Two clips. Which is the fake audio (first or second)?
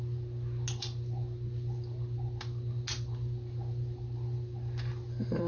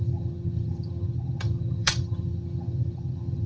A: second